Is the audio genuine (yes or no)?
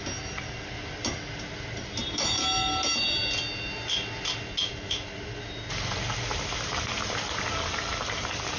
yes